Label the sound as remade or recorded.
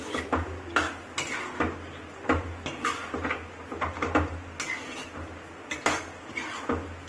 recorded